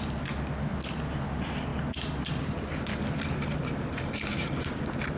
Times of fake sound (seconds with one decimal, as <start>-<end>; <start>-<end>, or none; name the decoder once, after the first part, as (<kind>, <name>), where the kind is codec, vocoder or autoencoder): none